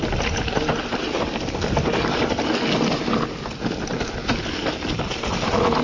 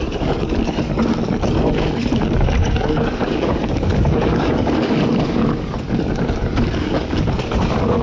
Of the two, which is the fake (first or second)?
second